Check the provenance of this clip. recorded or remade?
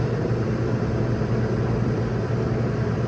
remade